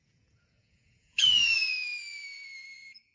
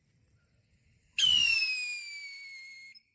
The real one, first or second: second